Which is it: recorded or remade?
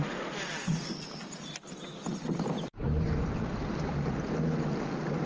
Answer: recorded